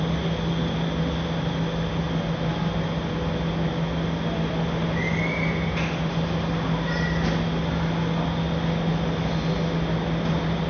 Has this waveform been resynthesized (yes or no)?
no